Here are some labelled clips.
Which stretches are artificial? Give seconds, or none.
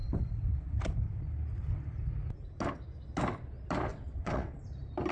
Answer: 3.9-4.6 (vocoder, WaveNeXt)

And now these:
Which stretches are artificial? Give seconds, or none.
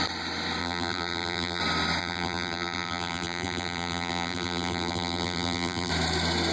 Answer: 0.6-1.6 (vocoder, BigVGAN v2); 2.0-5.9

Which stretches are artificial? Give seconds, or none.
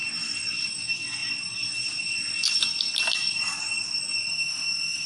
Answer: 4.3-5.1 (autoencoder, DAC-VAE)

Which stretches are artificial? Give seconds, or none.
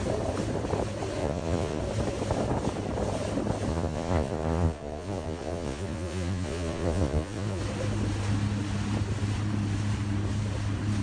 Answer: 1.2-1.8 (vocoder, Vocos); 3.7-7.6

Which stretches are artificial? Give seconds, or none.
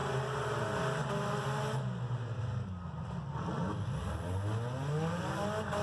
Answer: none